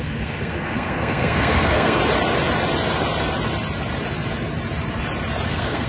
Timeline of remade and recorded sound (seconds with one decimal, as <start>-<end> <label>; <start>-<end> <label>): 0.0-2.0 remade; 2.0-5.5 recorded; 5.5-5.9 remade